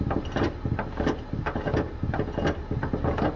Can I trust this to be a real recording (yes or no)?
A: yes